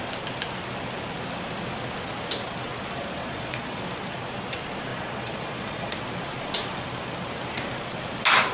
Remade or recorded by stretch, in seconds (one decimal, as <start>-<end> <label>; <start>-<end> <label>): 0.0-3.2 recorded; 3.2-3.8 remade; 3.8-4.9 recorded; 4.9-6.0 remade; 6.0-8.5 recorded